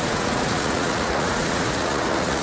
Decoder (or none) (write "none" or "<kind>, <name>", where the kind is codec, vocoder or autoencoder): vocoder, Vocos